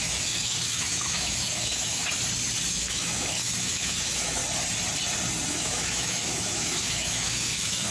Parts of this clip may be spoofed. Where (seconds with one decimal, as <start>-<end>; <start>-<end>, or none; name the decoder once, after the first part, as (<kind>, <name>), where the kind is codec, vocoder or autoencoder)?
0.0-2.0 (autoencoder, DAC-VAE); 2.7-4.4; 5.5-7.9